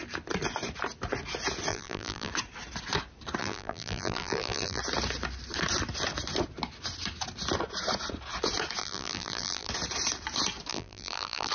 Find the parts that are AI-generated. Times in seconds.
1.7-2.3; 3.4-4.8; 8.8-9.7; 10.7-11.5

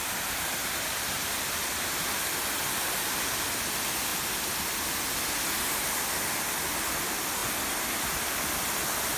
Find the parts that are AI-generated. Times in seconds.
0.6-2.1

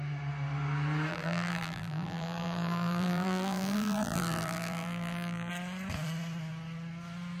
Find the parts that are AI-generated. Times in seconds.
1.1-5.5